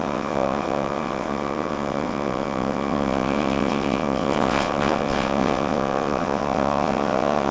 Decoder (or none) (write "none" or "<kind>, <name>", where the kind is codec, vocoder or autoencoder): vocoder, WaveNeXt